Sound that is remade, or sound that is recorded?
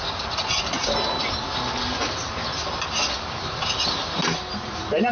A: recorded